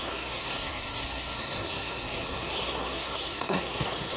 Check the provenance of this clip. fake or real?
fake